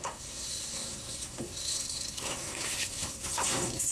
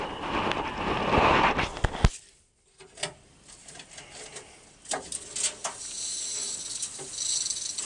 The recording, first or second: second